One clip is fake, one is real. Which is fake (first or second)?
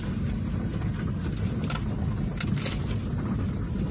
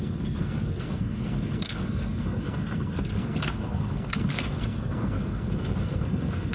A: second